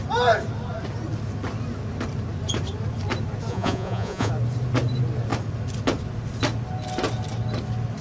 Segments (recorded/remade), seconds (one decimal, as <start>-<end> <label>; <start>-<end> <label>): 0.0-3.5 recorded; 3.5-4.3 remade; 4.3-8.0 recorded